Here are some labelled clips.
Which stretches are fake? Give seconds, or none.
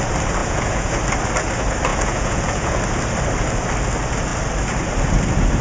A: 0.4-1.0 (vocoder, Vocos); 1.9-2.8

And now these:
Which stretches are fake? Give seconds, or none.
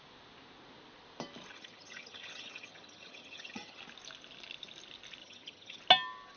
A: 1.5-3.8 (vocoder, HiFi-GAN); 5.2-5.8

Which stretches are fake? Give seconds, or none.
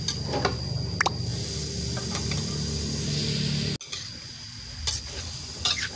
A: none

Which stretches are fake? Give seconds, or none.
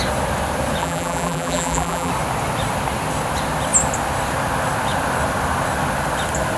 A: 0.8-2.1 (vocoder, BigVGAN v2)